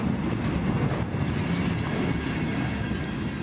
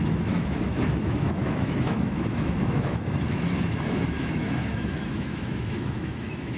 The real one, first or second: first